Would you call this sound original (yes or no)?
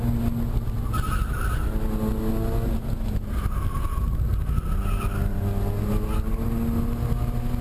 yes